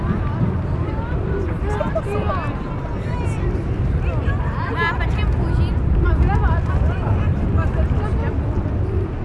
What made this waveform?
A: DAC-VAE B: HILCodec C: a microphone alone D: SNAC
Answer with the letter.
C